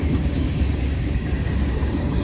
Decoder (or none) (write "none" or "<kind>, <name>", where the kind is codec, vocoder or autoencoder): codec, DAC